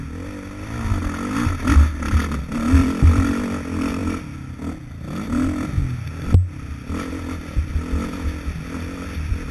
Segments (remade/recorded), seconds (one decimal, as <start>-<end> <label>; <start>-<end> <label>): 0.0-2.8 recorded; 2.8-3.3 remade; 3.3-9.5 recorded